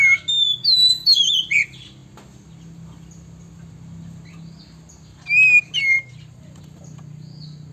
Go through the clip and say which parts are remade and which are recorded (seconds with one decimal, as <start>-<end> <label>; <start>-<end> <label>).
0.0-0.6 recorded; 0.6-1.3 remade; 1.3-7.7 recorded